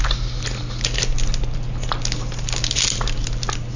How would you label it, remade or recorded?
recorded